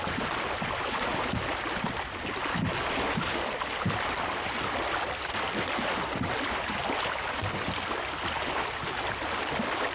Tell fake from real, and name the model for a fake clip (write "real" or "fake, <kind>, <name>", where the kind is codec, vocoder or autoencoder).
real